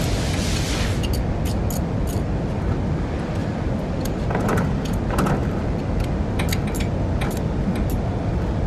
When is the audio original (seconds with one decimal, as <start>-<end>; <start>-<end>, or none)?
0.0-3.4; 4.1-5.4; 6.1-8.7